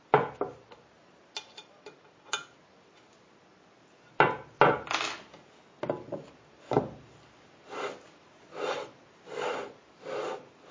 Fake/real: real